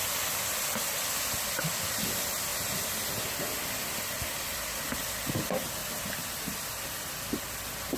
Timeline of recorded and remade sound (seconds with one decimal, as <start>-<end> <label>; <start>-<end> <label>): 0.0-8.0 recorded